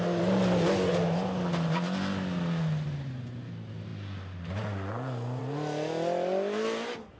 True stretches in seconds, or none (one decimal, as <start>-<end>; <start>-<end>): 0.0-7.2